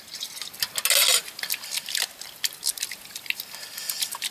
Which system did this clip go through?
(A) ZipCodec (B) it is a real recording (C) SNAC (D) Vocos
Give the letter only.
B